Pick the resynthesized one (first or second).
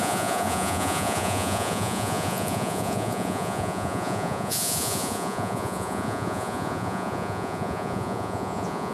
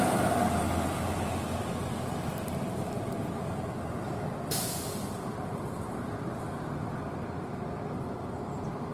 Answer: first